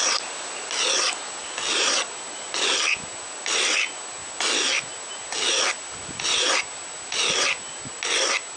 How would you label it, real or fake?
real